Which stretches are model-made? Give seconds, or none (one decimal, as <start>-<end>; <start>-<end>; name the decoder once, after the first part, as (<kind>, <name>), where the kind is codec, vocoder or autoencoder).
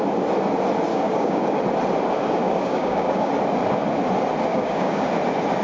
0.9-1.6 (codec, DAC); 2.4-3.3; 4.5-5.1